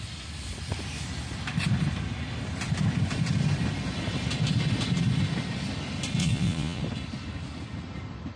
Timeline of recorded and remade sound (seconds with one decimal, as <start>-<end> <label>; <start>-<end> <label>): 0.0-6.2 recorded; 6.2-6.8 remade; 6.8-8.4 recorded